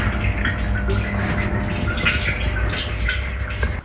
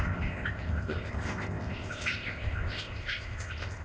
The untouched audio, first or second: first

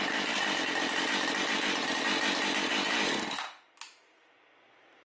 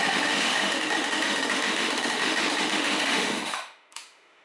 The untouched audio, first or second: first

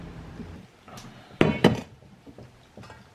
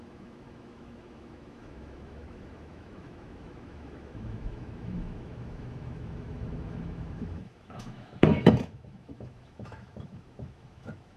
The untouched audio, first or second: first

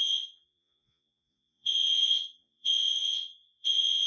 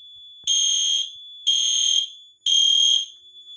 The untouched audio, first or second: second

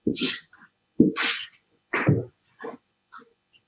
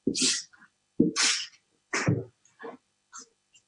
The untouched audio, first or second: second